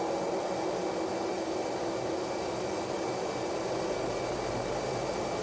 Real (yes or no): yes